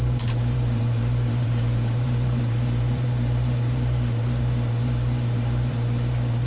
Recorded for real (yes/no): no